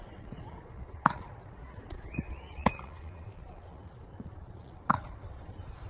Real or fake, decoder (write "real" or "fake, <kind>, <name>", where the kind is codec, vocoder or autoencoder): fake, vocoder, Vocos